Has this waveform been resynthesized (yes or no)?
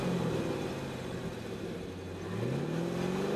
no